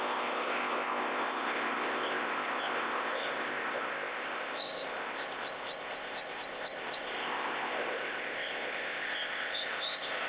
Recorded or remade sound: remade